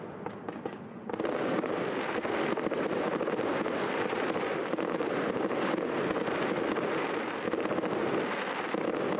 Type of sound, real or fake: real